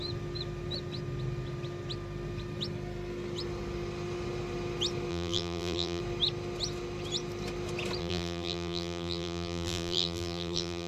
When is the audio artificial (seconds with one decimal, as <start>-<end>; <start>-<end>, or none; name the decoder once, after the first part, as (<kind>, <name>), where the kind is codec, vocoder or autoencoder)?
5.1-6.0 (vocoder, BigVGAN v2); 8.0-10.9